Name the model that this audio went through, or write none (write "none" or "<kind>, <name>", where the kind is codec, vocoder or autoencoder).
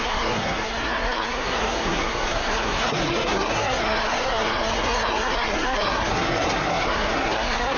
codec, SNAC